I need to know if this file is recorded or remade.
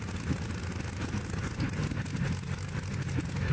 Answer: recorded